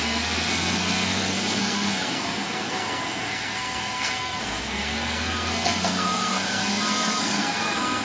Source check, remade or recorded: remade